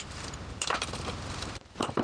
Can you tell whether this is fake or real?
fake